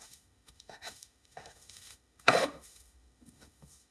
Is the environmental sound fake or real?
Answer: fake